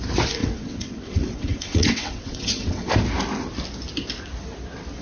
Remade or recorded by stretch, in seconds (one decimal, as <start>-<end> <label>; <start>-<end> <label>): 0.0-0.4 recorded; 0.4-2.9 remade; 2.9-5.0 recorded